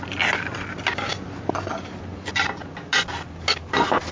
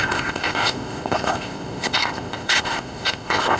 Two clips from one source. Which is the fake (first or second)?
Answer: second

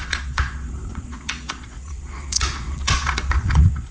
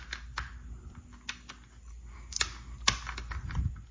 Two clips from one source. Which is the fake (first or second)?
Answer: first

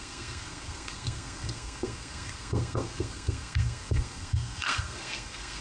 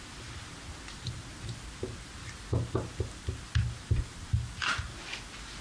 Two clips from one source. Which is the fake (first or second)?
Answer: first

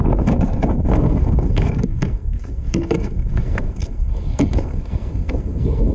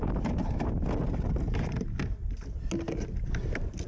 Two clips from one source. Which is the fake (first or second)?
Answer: first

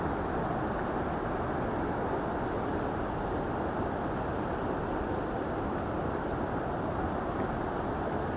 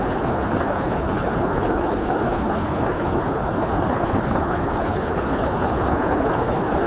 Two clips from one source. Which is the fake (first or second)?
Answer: second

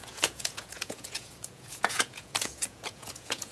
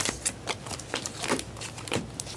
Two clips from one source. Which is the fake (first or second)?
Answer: first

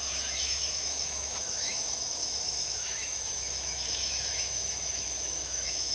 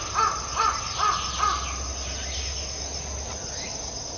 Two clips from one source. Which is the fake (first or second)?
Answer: first